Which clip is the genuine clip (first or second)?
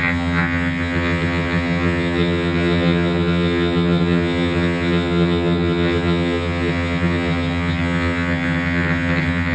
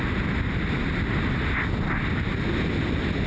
second